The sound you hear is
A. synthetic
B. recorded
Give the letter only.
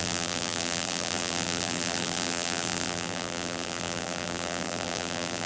A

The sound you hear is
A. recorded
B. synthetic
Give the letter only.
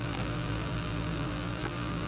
B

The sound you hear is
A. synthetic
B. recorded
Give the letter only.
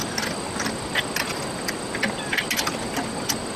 B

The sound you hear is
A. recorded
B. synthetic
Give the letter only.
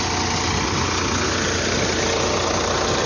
A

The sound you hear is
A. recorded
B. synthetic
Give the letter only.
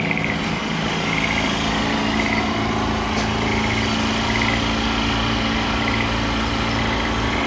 A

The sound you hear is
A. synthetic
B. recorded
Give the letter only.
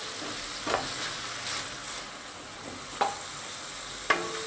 B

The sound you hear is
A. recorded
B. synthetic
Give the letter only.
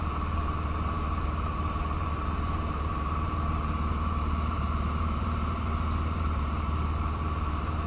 B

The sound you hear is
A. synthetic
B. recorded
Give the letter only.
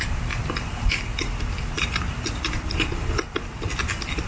A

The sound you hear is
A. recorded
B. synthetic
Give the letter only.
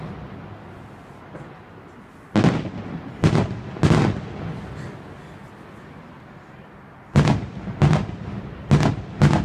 A